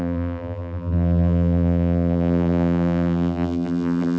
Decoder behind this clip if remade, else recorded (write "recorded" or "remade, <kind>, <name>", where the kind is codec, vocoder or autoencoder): remade, vocoder, BigVGAN v2